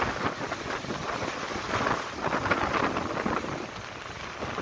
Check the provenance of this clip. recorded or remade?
recorded